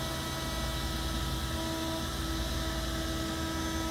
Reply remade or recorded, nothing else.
recorded